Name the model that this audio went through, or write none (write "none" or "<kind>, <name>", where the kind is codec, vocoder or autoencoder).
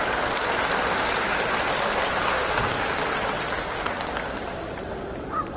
none